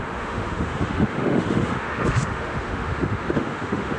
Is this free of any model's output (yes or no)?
no